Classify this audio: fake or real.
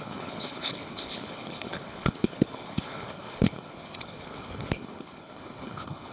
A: fake